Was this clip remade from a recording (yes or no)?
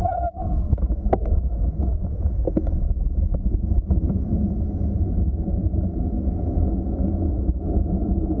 yes